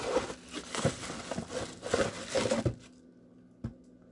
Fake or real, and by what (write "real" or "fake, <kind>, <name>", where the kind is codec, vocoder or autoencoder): real